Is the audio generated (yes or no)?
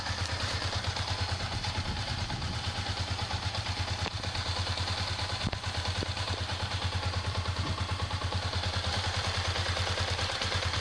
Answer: yes